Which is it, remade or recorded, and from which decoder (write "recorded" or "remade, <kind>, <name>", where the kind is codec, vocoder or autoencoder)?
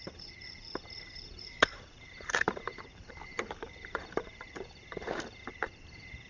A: remade, vocoder, BigVGAN v2